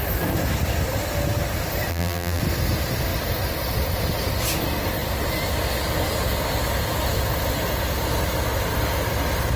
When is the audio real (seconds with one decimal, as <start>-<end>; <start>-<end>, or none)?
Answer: 0.0-1.9; 2.4-9.6